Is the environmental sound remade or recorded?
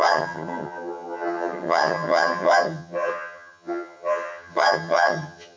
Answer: remade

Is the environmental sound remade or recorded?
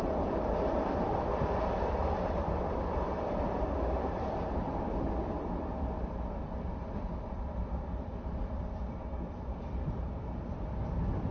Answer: remade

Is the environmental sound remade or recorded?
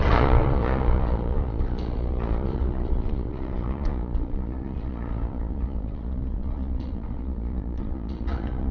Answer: remade